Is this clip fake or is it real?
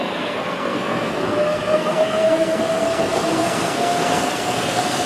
fake